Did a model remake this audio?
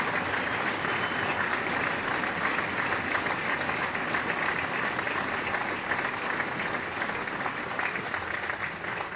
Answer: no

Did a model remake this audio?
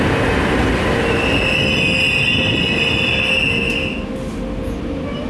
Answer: no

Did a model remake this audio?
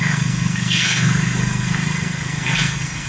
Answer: yes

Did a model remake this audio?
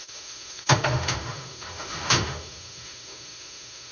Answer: yes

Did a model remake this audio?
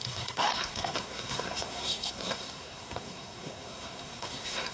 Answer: yes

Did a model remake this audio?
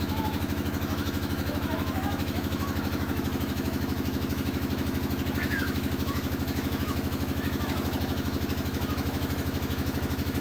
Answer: yes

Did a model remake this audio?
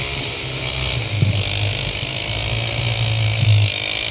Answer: no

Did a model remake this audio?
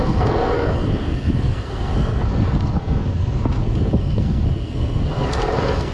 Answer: yes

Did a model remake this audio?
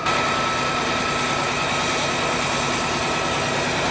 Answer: no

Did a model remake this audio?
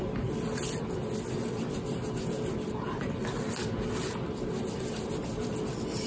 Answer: no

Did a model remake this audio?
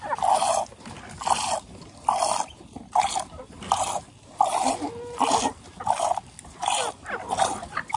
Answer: no